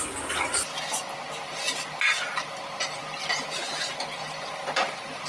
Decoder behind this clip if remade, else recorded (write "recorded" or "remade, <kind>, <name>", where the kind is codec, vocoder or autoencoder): recorded